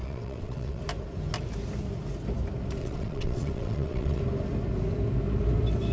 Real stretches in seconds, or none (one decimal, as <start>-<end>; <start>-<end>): 0.8-2.8; 4.2-5.9